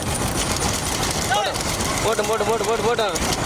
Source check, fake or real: real